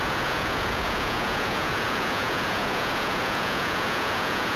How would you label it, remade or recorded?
remade